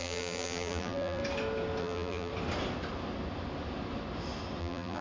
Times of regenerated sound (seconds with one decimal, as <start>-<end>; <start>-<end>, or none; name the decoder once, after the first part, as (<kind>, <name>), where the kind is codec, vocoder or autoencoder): 0.0-1.2 (vocoder, BigVGAN v2); 1.8-2.3; 4.6-5.0